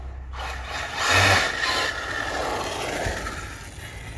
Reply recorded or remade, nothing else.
recorded